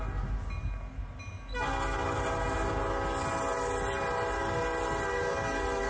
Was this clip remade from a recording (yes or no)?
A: no